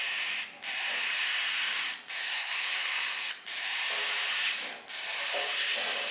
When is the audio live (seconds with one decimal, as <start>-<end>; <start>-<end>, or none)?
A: 0.0-2.2; 3.3-6.1